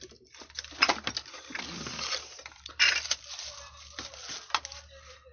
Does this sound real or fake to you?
real